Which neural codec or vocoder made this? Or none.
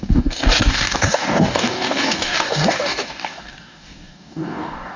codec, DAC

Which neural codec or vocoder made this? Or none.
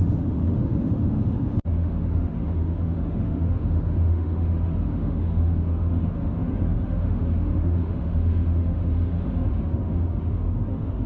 autoencoder, DAC-VAE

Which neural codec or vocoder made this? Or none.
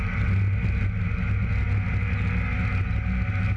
none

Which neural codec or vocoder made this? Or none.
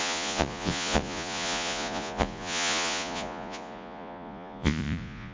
vocoder, Vocos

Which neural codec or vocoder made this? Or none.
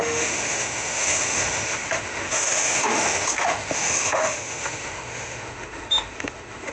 autoencoder, DAC-VAE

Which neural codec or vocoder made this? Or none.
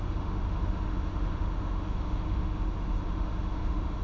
autoencoder, DAC-VAE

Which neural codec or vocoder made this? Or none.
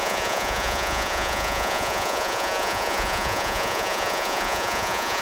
vocoder, Vocos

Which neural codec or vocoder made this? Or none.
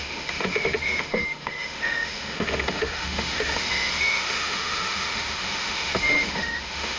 autoencoder, DAC-VAE